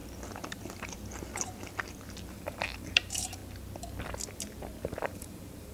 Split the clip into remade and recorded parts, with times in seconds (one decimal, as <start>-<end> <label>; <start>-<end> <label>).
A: 0.0-2.3 recorded; 2.3-3.4 remade; 3.4-4.8 recorded; 4.8-5.7 remade